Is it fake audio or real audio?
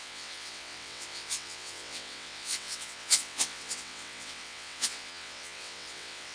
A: fake